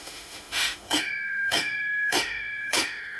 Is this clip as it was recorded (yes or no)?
no